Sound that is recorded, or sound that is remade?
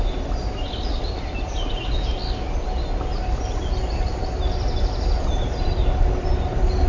recorded